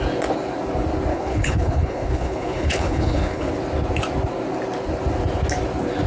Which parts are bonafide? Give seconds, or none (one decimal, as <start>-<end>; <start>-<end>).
0.0-1.1; 3.5-6.1